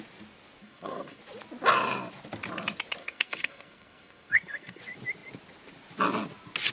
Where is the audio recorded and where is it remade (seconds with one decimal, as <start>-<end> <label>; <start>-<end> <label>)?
0.0-0.6 recorded; 0.6-1.2 remade; 1.2-3.0 recorded; 3.0-4.8 remade; 4.8-6.7 recorded